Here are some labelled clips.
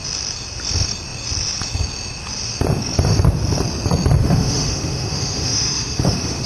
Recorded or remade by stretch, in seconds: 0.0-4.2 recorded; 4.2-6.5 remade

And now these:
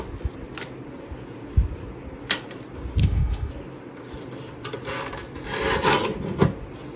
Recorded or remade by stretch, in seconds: 0.0-3.0 recorded; 3.0-3.5 remade; 3.5-7.0 recorded

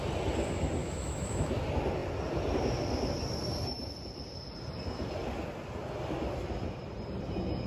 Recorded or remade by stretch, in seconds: 0.0-0.8 recorded; 0.8-1.5 remade; 1.5-7.7 recorded

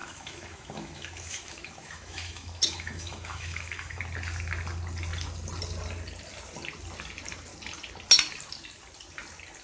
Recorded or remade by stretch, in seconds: 0.0-4.0 remade; 4.0-9.6 recorded

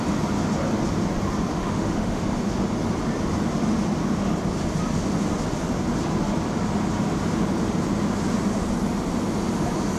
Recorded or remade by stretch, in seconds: 0.0-1.5 recorded; 1.5-2.2 remade; 2.2-10.0 recorded

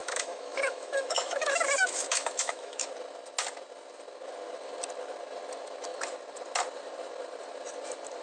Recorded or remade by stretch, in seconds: 0.0-2.9 remade; 2.9-8.2 recorded

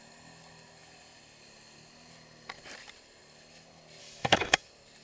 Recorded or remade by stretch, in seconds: 0.0-4.0 recorded; 4.0-4.6 remade; 4.6-5.0 recorded